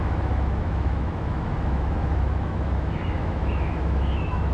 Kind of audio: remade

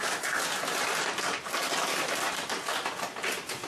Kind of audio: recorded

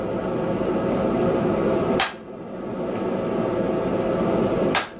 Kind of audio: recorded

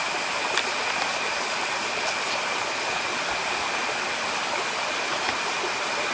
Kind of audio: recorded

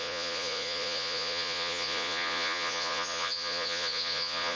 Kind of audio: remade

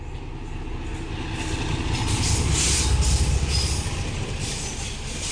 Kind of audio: recorded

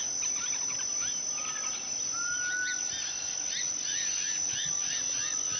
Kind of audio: recorded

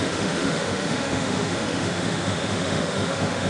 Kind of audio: remade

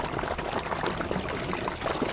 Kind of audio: recorded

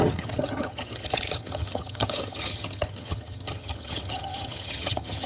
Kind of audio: remade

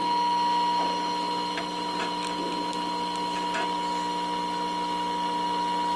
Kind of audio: recorded